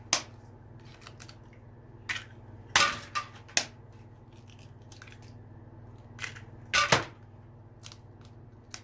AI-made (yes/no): no